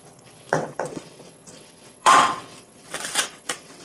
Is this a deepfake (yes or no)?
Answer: yes